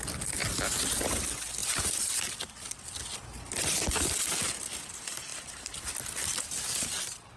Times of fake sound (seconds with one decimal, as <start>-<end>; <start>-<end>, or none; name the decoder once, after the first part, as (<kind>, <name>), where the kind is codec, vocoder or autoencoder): 1.6-2.3 (vocoder, BigVGAN v2); 5.3-6.9